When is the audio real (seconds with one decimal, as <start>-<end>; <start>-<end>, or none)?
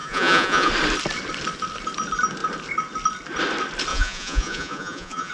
0.7-3.9